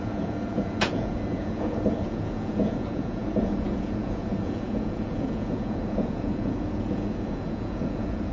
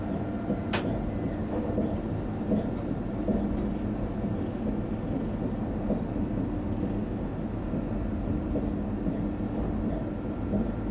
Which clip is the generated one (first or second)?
first